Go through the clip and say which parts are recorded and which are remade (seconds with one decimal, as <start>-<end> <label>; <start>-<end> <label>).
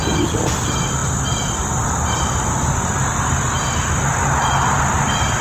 0.0-5.4 recorded